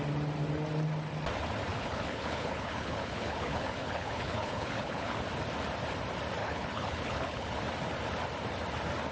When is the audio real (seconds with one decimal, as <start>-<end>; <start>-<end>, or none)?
0.0-1.7; 5.2-6.4; 7.6-9.1